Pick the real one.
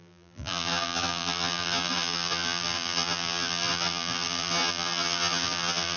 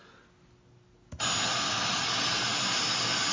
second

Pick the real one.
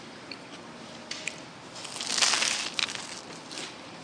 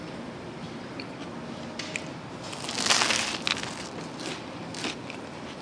second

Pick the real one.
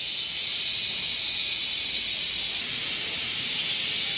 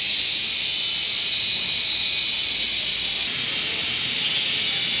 second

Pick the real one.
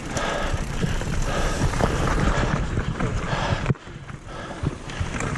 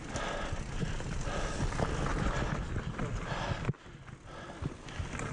second